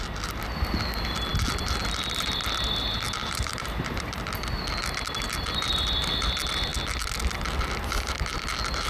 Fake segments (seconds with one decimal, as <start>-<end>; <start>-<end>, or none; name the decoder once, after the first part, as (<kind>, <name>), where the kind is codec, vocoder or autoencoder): 3.2-4.3 (vocoder, BigVGAN v2)

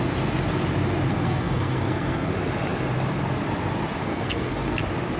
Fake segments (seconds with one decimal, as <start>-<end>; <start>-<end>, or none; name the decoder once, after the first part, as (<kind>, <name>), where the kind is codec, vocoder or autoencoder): 1.1-2.3 (codec, SNAC); 4.0-4.8

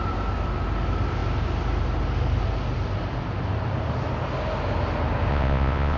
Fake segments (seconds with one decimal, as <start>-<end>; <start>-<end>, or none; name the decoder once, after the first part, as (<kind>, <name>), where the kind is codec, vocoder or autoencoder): 5.3-6.0 (vocoder, Vocos)